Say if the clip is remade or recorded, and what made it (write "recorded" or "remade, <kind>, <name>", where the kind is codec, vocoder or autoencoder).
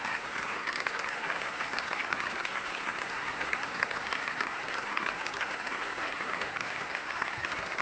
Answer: remade, codec, SNAC